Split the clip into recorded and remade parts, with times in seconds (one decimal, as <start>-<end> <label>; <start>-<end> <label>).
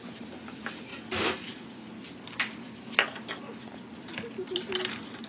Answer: 0.0-5.3 recorded